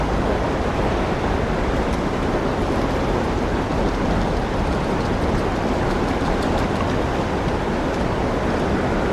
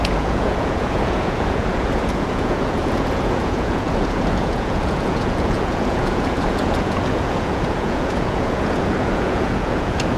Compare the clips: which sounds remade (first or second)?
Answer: second